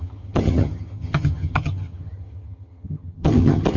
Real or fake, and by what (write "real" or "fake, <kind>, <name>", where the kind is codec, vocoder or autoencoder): fake, vocoder, HiFi-GAN